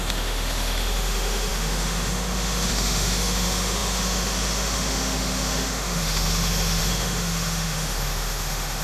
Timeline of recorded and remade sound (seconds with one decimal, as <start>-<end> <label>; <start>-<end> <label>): 0.0-8.8 remade